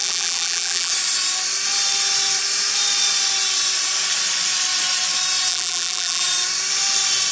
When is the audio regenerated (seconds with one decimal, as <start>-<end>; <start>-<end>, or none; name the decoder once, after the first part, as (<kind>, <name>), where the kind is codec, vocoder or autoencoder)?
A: 0.0-0.9 (vocoder, BigVGAN v2); 5.5-6.2